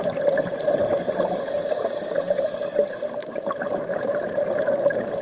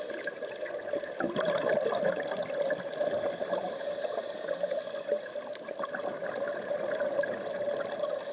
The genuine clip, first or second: second